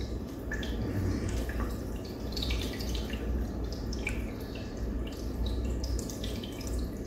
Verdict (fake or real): fake